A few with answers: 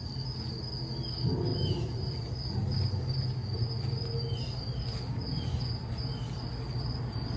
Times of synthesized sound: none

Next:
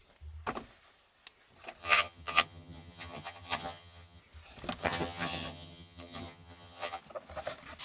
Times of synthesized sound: 1.8-4.2 (vocoder, HiFi-GAN); 4.8-7.0

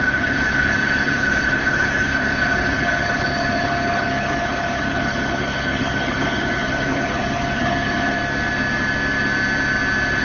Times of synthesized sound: 0.0-8.2 (codec, HILCodec)

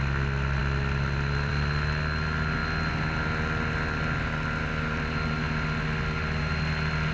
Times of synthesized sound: none

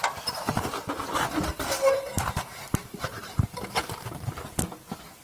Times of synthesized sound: 1.5-4.6 (vocoder, BigVGAN v2)

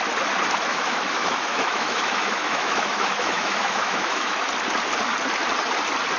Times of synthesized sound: 0.7-4.4 (autoencoder, DAC-VAE)

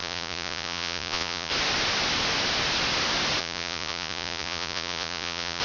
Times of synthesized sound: 0.0-1.5 (vocoder, Vocos); 3.4-5.6

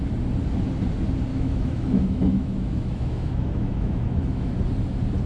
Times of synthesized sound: 1.3-4.5 (autoencoder, DAC-VAE)